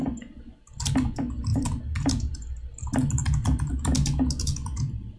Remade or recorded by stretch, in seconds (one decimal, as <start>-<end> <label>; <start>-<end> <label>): 0.0-1.5 recorded; 1.5-2.5 remade; 2.5-5.2 recorded